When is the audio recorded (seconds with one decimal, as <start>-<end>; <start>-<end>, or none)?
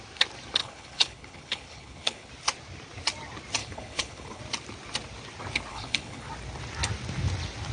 0.0-0.6; 2.3-3.6; 4.4-5.7; 6.3-7.7